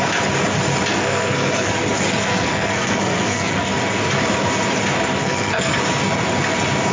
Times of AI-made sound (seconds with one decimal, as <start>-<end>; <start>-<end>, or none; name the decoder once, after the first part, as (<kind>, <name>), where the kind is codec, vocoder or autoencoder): 0.9-1.7 (codec, SNAC); 2.2-3.7; 5.2-5.8